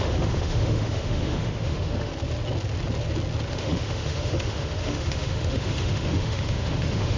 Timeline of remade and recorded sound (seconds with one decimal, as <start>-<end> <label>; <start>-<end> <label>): 0.0-2.1 remade; 2.1-3.5 recorded; 3.5-7.2 remade